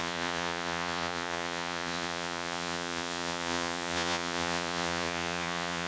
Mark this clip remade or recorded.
remade